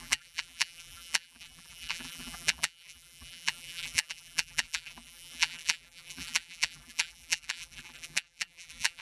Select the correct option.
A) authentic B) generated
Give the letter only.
B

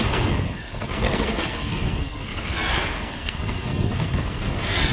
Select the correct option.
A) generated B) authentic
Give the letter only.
A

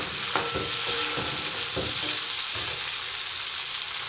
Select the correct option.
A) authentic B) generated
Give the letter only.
A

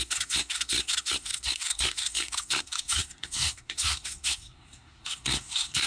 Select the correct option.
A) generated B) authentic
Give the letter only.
A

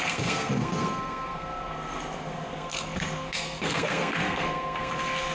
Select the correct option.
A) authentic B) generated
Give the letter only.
B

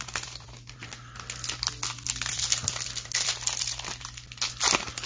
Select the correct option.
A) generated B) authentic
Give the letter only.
B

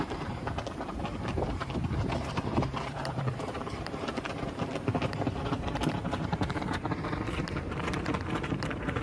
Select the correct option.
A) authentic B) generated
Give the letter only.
B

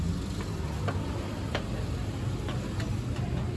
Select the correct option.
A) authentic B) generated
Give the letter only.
A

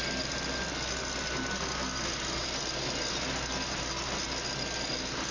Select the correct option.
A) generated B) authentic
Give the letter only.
B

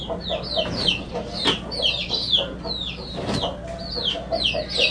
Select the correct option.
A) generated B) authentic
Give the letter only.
B